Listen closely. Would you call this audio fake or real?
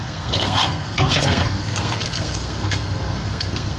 fake